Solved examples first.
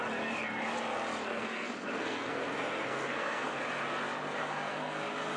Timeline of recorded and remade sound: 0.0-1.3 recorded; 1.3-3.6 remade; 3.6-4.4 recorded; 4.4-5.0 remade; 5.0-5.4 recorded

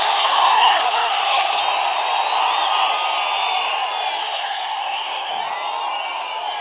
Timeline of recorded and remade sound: 0.0-1.6 remade; 1.6-4.2 recorded; 4.2-5.3 remade; 5.3-6.6 recorded

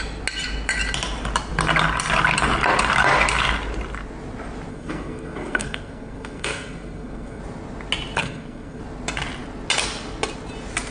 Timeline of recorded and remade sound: 0.0-4.7 recorded; 4.7-7.4 remade; 7.4-8.2 recorded; 8.2-8.8 remade; 8.8-10.9 recorded

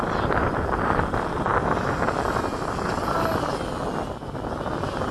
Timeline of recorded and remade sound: 0.0-5.1 recorded

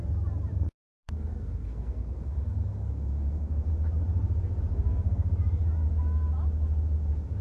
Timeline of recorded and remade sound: 0.0-0.5 recorded; 0.5-3.7 remade; 3.7-4.7 recorded; 4.7-5.3 remade; 5.3-7.4 recorded

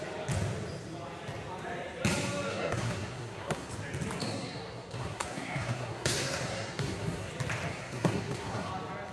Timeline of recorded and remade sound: 0.0-2.5 recorded; 2.5-3.7 remade; 3.7-4.2 recorded; 4.2-7.3 remade; 7.3-7.7 recorded; 7.7-8.7 remade; 8.7-9.1 recorded